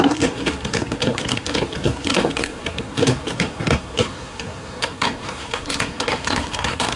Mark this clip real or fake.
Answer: fake